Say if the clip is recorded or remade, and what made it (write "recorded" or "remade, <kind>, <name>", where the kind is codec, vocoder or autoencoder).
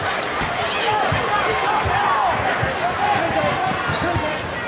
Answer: recorded